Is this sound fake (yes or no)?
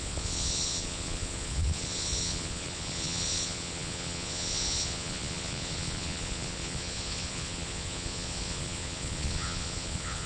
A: yes